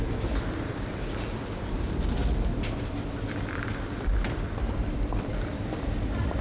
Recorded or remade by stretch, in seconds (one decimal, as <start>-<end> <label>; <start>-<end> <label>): 0.0-2.2 remade; 2.2-2.8 recorded; 2.8-6.4 remade